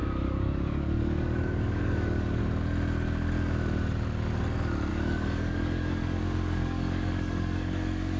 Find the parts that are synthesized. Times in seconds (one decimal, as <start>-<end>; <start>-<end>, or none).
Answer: 0.0-2.4; 4.9-8.2